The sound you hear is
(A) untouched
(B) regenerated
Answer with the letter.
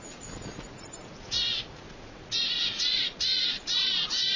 B